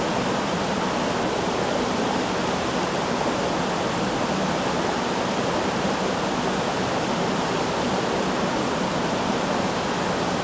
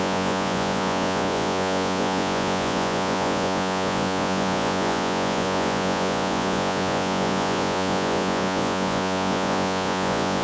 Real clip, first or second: first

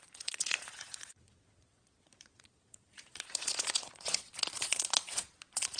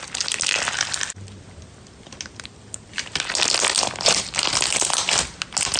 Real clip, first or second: second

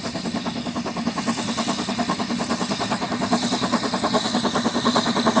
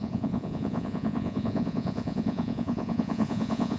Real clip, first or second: first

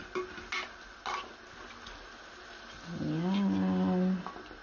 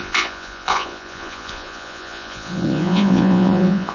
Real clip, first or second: first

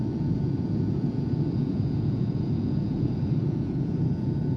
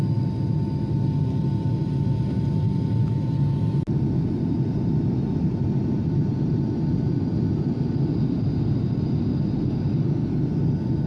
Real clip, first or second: second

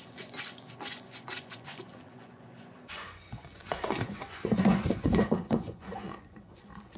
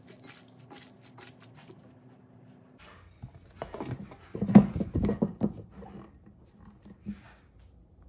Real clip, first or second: second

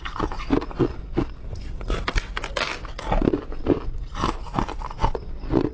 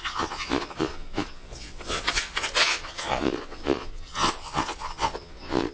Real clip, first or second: first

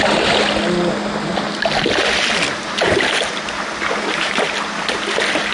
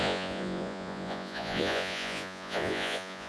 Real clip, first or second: first